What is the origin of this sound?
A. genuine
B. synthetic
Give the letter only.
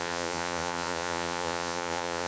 B